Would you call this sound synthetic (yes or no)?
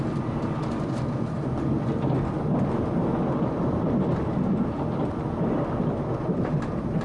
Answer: no